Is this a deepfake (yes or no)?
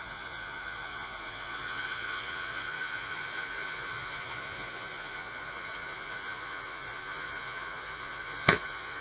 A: yes